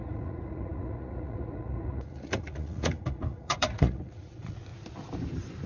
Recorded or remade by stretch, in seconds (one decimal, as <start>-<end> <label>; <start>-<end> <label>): 0.0-4.7 remade; 4.7-5.7 recorded